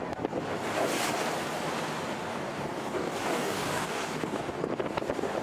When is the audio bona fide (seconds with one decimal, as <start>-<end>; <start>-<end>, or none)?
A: 0.0-2.3; 4.6-5.4